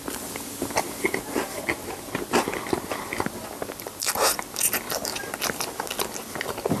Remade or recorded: recorded